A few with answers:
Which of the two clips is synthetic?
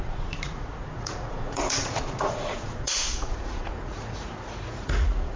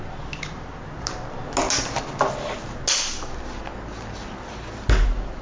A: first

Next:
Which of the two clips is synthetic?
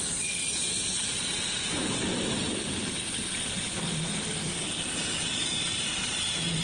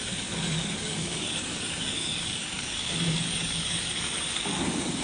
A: second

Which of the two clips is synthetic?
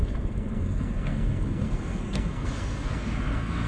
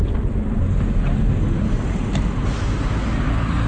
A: first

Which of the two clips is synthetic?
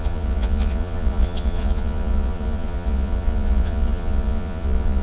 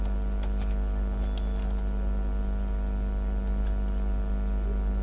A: first